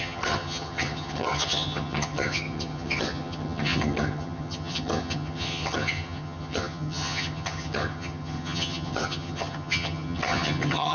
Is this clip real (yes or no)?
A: no